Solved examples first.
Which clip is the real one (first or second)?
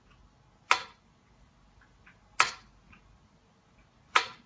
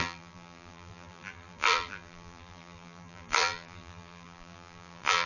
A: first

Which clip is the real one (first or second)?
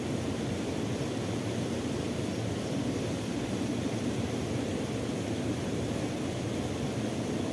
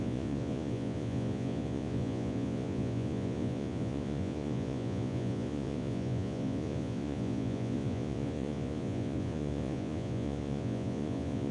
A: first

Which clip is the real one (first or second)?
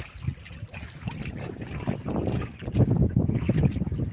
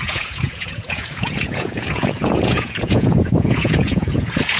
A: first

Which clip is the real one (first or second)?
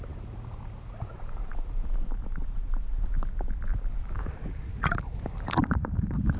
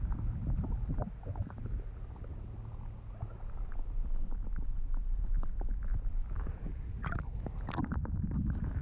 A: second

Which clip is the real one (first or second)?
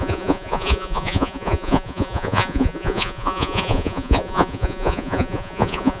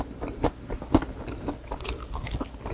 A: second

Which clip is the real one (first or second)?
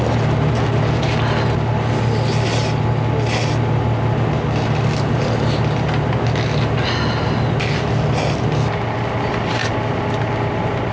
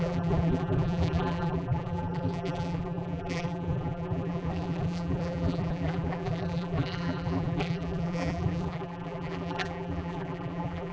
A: first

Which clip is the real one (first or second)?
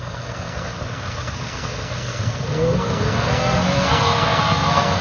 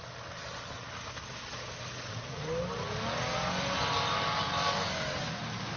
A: second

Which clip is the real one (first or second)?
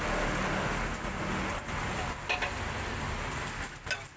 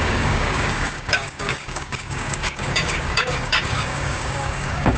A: first